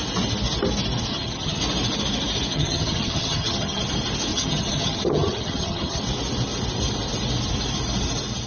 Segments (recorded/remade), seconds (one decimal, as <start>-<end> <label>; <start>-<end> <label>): 0.0-1.1 recorded; 1.1-1.6 remade; 1.6-2.5 recorded; 2.5-3.8 remade; 3.8-4.3 recorded; 4.3-6.0 remade; 6.0-8.5 recorded